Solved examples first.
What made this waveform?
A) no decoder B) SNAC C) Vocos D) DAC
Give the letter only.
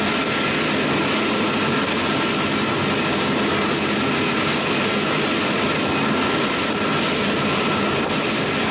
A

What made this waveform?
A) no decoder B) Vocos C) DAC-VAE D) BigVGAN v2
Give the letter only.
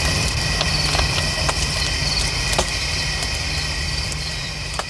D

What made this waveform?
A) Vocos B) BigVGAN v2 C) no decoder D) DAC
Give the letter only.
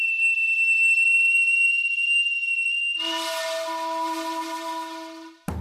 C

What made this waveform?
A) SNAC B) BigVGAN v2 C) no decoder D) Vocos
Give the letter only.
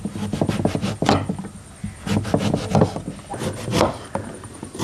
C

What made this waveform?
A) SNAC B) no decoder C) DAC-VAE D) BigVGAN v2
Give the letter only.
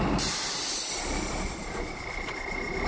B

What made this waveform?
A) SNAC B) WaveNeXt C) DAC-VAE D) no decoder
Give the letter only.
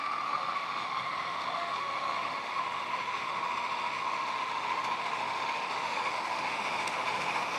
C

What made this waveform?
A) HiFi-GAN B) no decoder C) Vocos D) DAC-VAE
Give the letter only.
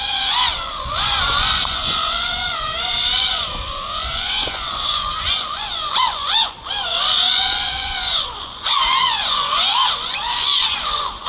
C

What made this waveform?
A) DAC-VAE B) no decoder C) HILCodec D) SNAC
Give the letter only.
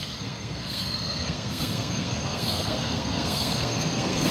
D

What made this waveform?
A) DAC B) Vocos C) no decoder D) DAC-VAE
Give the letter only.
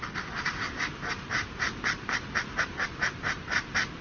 C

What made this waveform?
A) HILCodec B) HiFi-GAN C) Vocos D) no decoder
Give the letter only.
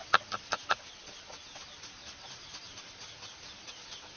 D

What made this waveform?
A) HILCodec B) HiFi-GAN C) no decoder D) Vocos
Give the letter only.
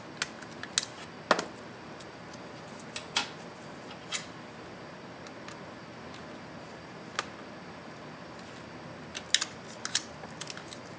C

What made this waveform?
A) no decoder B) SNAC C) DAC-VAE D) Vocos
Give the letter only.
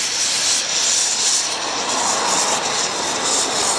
A